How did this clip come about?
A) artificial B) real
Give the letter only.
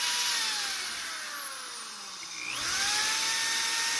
B